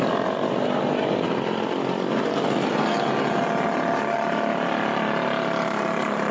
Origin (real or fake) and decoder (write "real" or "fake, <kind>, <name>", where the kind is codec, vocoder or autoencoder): real